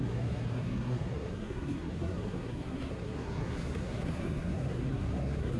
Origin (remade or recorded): remade